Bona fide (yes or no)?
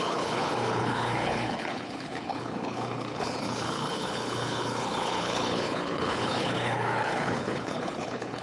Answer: no